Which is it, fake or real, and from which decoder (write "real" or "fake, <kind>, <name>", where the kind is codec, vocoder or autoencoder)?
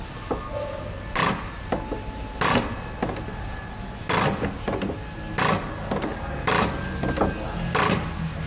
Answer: real